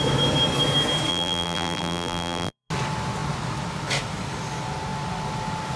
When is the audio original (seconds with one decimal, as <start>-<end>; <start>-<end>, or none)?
0.0-1.1; 2.7-5.8